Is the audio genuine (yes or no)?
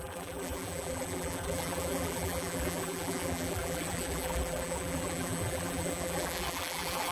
no